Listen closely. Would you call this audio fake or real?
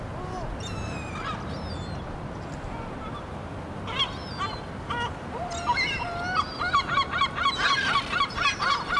real